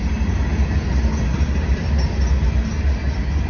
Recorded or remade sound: recorded